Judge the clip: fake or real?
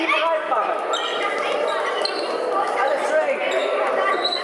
real